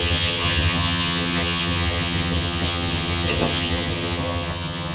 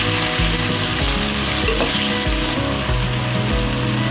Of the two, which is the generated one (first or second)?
first